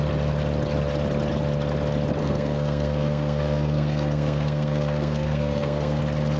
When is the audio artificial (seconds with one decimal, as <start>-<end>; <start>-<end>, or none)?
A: 2.2-6.0